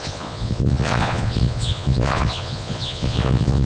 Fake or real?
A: fake